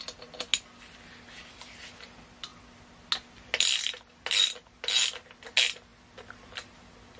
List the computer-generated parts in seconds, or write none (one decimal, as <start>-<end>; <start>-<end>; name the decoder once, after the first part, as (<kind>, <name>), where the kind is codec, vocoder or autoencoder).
none